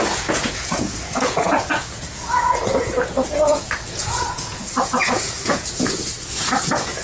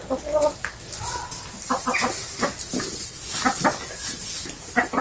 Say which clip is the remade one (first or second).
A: first